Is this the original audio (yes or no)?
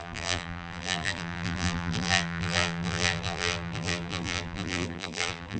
no